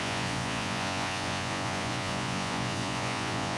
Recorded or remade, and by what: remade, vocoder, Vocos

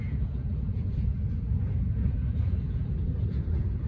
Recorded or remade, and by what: remade, vocoder, Vocos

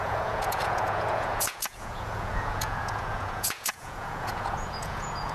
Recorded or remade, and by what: remade, vocoder, Vocos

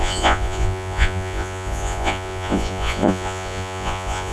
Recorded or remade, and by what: remade, vocoder, Vocos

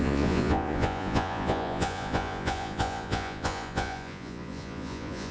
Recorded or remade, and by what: remade, vocoder, Vocos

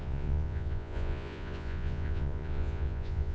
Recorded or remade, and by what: remade, vocoder, Vocos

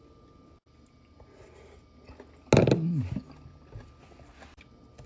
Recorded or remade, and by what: recorded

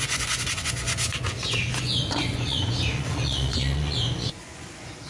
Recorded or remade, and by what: remade, vocoder, Vocos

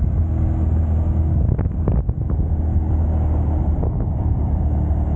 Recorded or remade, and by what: recorded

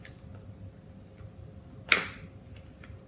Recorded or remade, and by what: recorded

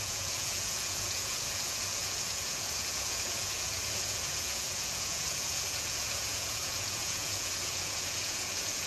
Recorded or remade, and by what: remade, vocoder, Vocos